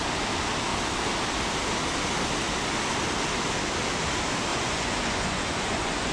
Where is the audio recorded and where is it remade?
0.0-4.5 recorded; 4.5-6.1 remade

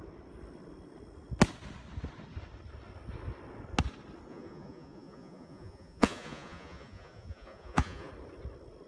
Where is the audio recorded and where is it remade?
0.0-4.3 recorded; 4.3-8.1 remade; 8.1-8.9 recorded

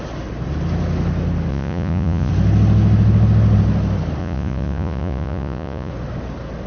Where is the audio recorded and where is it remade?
0.0-1.5 recorded; 1.5-2.3 remade; 2.3-4.2 recorded; 4.2-5.9 remade; 5.9-6.7 recorded

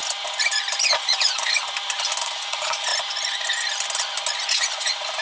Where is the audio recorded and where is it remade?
0.0-0.8 recorded; 0.8-1.6 remade; 1.6-2.2 recorded; 2.2-2.9 remade; 2.9-4.4 recorded; 4.4-5.2 remade

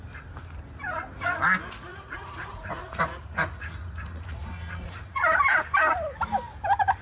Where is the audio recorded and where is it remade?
0.0-1.9 recorded; 1.9-5.4 remade; 5.4-7.0 recorded

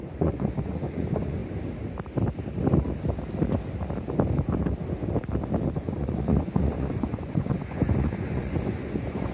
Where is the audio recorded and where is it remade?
0.0-1.4 remade; 1.4-5.8 recorded; 5.8-9.3 remade

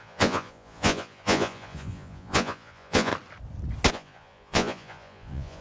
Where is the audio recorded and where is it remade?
0.0-3.1 remade; 3.1-3.9 recorded; 3.9-5.6 remade